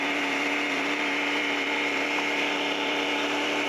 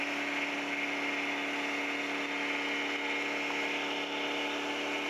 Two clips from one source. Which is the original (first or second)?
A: second